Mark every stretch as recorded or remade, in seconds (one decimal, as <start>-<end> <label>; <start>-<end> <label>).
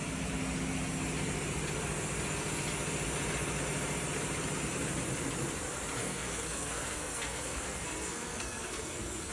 0.0-6.0 recorded; 6.0-9.3 remade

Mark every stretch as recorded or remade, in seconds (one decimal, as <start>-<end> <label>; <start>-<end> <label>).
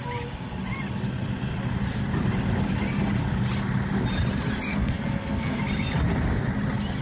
0.0-4.7 recorded; 4.7-5.6 remade; 5.6-7.0 recorded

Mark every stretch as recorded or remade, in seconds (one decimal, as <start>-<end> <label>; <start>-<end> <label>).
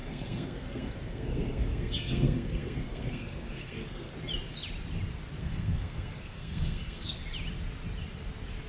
0.0-4.1 remade; 4.1-5.4 recorded; 5.4-7.2 remade; 7.2-8.7 recorded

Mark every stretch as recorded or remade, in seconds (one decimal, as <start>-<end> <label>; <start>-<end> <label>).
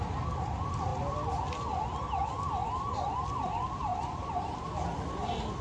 0.0-3.9 recorded; 3.9-4.9 remade; 4.9-5.6 recorded